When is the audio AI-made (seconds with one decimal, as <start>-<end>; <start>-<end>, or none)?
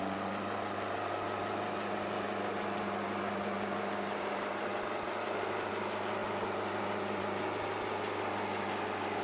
none